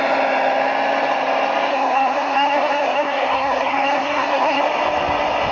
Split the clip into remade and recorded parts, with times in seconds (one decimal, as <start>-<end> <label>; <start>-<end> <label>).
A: 0.0-1.7 recorded; 1.7-4.6 remade; 4.6-5.5 recorded